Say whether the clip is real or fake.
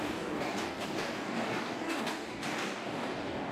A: fake